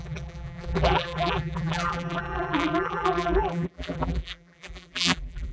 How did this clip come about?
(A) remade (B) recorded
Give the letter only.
A